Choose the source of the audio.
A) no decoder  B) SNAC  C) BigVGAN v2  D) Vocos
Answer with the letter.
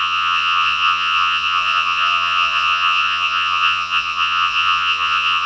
D